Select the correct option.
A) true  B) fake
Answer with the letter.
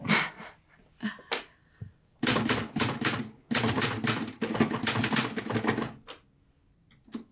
A